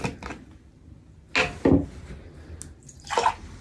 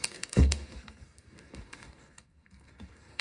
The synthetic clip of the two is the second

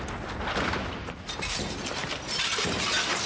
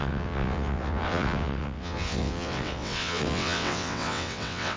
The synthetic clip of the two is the second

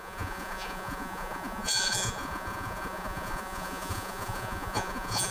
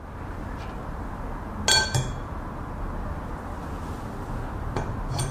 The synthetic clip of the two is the first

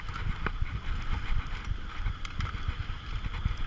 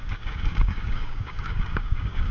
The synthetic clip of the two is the second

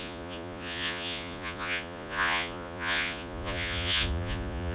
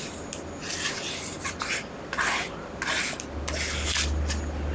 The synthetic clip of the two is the first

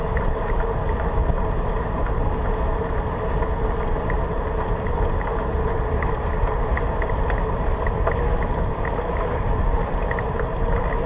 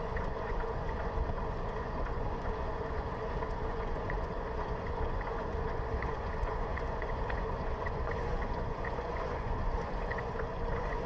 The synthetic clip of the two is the second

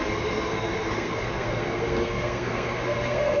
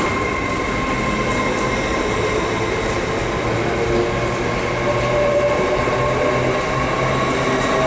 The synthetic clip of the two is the first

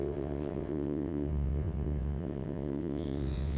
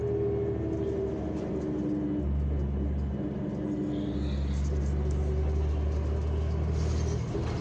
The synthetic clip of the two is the first